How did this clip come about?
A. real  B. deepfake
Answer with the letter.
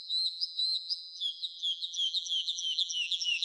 B